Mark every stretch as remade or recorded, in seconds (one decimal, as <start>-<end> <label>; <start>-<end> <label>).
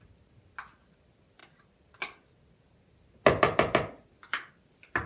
0.0-5.1 recorded